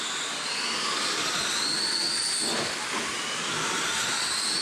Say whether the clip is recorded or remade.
recorded